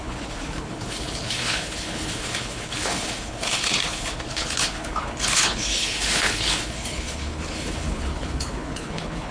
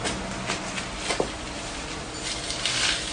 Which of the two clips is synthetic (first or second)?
first